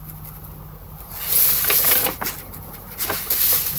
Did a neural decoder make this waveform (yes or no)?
no